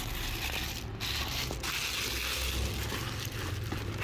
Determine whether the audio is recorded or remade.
recorded